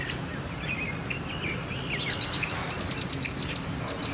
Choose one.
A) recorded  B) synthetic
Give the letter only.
A